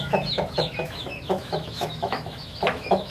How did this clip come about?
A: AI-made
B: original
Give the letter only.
A